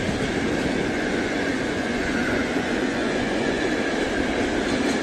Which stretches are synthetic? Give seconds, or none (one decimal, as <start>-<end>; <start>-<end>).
0.7-3.7